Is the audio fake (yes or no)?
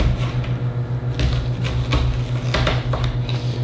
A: no